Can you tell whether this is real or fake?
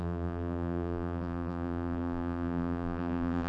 fake